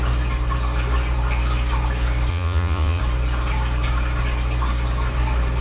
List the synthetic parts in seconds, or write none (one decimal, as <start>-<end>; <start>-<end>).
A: 2.3-3.0

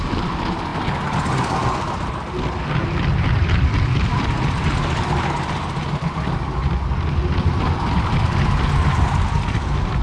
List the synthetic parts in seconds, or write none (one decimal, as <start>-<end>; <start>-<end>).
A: none

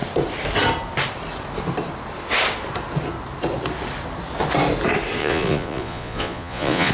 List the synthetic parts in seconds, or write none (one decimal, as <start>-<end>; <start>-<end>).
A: 5.2-6.9

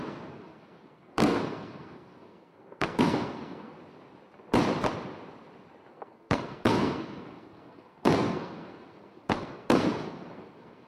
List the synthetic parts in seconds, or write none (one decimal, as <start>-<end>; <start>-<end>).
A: 0.0-3.8; 5.9-10.9

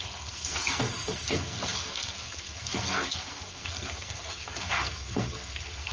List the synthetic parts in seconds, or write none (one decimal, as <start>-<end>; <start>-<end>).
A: 0.0-5.9

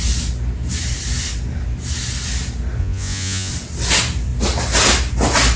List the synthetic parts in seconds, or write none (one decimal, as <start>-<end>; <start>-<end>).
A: 2.8-3.5

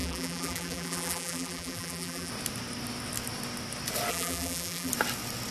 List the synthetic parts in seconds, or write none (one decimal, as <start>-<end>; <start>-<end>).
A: 0.0-2.3; 4.1-4.9

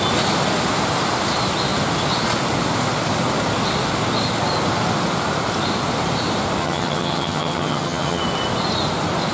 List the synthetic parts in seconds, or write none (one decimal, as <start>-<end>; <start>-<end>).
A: 6.6-8.2